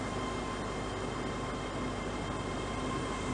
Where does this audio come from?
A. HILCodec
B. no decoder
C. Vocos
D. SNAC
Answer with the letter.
B